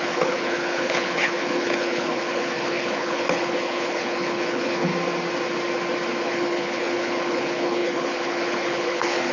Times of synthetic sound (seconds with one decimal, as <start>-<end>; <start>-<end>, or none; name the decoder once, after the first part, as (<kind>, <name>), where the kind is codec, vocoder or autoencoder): 0.0-4.9 (codec, HILCodec); 6.2-9.3